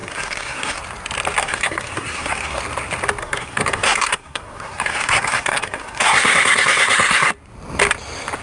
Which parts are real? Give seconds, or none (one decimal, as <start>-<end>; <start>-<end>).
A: 0.8-1.4; 2.6-3.2; 7.3-8.4